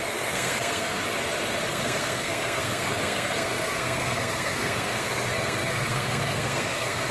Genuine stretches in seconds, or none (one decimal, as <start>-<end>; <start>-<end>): 1.0-1.7